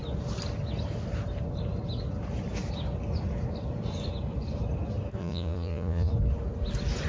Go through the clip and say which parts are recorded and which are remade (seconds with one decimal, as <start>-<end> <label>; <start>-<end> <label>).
0.0-5.2 recorded; 5.2-6.1 remade; 6.1-7.1 recorded

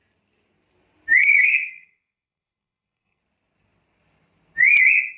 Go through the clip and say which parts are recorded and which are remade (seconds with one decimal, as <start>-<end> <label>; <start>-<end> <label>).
0.0-1.2 recorded; 1.2-3.2 remade; 3.2-5.2 recorded

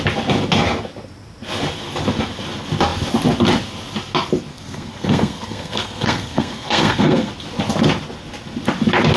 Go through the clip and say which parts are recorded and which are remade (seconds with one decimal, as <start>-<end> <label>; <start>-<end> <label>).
0.0-4.5 recorded; 4.5-7.3 remade; 7.3-9.2 recorded

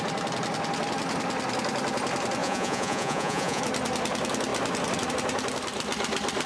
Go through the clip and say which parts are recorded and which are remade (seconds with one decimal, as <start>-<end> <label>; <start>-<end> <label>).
0.0-2.4 recorded; 2.4-3.6 remade; 3.6-6.5 recorded